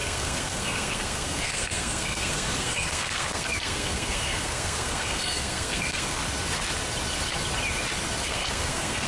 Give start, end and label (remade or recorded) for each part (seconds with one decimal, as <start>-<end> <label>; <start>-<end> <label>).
0.0-6.2 remade; 6.2-8.2 recorded; 8.2-9.1 remade